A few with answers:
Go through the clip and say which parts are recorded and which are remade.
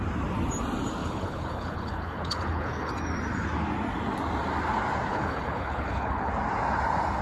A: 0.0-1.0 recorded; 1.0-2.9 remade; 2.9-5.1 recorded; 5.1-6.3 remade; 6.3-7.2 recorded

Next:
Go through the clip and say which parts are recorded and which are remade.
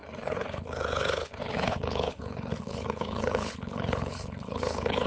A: 0.0-5.1 remade